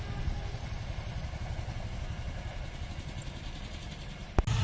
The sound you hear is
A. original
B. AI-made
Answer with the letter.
A